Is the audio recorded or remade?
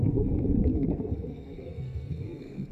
remade